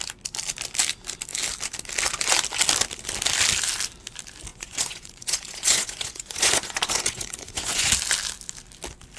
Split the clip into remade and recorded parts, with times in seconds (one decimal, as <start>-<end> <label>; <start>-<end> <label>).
0.0-4.5 recorded; 4.5-7.9 remade; 7.9-9.2 recorded